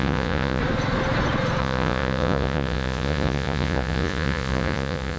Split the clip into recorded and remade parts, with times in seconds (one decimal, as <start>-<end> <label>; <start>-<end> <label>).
0.0-0.6 remade; 0.6-1.6 recorded; 1.6-5.2 remade